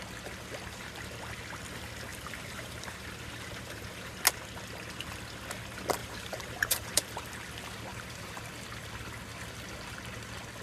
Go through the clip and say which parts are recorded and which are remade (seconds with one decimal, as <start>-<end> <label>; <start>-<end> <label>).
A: 0.0-2.1 recorded; 2.1-4.2 remade; 4.2-6.0 recorded; 6.0-7.5 remade; 7.5-7.9 recorded; 7.9-8.4 remade; 8.4-10.6 recorded